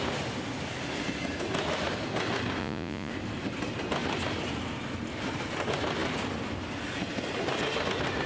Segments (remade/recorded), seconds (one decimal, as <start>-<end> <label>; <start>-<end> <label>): 0.0-2.6 recorded; 2.6-3.1 remade; 3.1-8.3 recorded